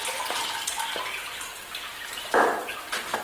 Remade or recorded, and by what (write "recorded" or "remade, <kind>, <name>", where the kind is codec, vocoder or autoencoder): remade, vocoder, BigVGAN v2